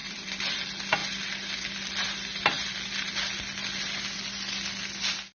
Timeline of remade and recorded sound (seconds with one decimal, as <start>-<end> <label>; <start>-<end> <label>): 0.0-0.6 remade; 0.6-5.4 recorded